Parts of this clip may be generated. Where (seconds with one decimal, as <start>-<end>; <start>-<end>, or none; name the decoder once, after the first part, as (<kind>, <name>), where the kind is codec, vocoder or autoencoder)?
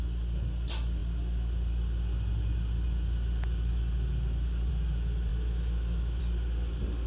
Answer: 5.3-6.2 (autoencoder, DAC-VAE)